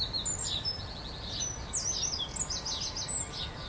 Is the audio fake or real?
real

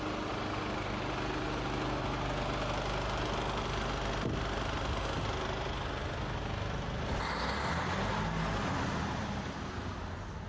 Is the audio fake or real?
real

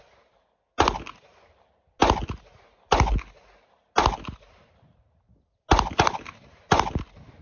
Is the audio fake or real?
real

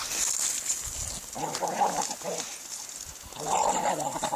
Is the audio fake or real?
real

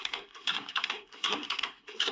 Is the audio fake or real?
fake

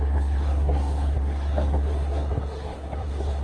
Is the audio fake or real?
fake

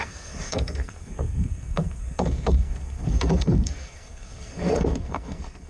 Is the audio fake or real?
fake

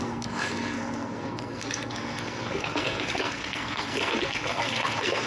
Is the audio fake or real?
fake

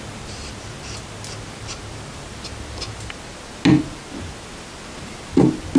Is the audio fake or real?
real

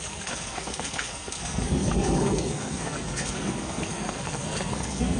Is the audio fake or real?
fake